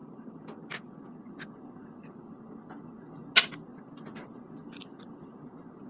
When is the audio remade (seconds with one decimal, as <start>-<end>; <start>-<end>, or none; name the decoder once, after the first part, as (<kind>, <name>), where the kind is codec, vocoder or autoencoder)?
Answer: none